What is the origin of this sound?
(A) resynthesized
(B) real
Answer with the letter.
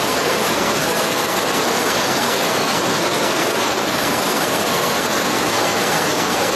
A